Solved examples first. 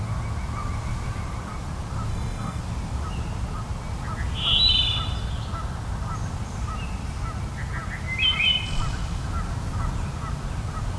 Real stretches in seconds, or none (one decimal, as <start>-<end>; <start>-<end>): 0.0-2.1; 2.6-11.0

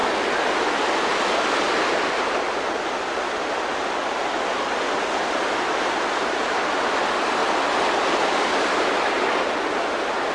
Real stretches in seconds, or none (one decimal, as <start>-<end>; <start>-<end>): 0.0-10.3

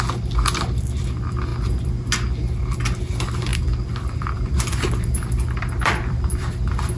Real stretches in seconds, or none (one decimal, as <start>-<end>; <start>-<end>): 0.0-3.5; 6.5-7.0

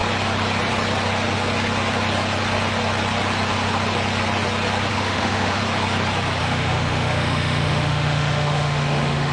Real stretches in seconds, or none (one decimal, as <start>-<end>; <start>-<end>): 0.0-4.9; 5.6-6.4

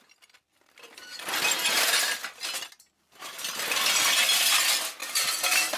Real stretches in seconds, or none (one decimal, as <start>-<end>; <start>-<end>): 0.0-5.0

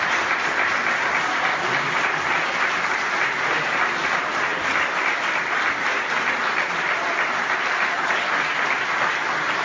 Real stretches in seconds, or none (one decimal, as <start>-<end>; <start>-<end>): 0.0-9.6

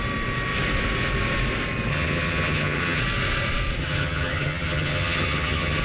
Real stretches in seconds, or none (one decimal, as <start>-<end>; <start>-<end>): 0.0-1.9; 3.0-3.8